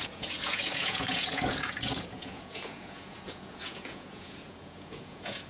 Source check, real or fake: fake